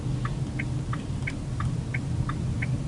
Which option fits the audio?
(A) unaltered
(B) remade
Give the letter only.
A